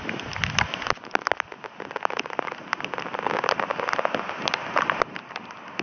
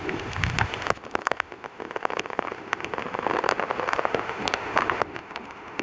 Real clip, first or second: first